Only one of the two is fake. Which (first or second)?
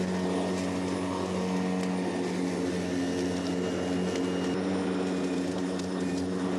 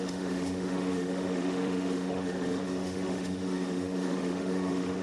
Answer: second